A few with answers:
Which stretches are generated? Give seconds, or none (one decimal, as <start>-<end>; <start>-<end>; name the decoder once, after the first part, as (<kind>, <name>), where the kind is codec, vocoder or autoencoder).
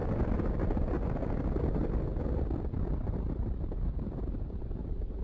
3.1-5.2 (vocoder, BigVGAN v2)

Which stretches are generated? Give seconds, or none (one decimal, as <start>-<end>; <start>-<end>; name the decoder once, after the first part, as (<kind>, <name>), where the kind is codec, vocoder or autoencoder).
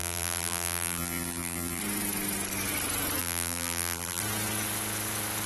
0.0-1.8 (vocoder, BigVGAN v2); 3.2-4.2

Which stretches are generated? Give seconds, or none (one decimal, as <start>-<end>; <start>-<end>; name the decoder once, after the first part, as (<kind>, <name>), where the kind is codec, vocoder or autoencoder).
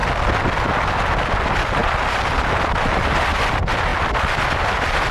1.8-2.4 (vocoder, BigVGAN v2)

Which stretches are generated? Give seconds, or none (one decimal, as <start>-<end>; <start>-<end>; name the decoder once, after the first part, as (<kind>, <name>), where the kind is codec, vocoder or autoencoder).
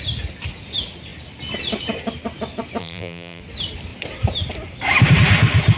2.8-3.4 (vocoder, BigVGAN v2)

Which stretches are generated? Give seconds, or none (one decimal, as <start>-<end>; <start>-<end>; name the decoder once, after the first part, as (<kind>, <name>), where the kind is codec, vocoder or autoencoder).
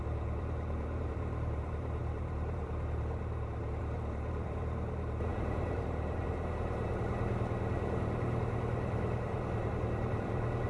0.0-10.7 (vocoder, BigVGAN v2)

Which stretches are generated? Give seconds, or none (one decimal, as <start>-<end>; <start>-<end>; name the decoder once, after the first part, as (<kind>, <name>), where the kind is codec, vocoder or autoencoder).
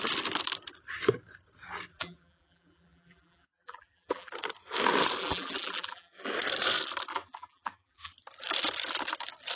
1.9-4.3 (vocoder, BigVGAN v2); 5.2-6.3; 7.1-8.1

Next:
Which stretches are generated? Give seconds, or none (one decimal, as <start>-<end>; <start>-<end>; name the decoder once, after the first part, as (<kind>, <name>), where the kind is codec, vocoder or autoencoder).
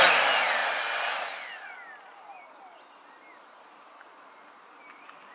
none